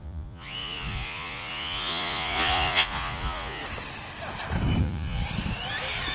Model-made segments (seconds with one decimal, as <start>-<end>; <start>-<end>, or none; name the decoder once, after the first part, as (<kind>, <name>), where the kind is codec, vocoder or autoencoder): 0.0-3.6 (vocoder, Vocos); 4.8-5.2